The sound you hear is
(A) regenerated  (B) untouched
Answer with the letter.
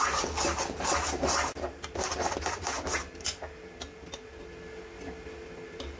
B